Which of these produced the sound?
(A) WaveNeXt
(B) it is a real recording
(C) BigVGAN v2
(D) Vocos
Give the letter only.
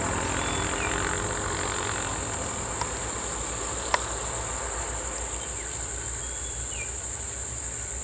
B